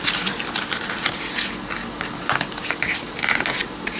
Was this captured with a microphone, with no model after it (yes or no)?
yes